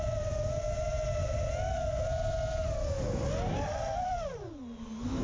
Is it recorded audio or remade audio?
recorded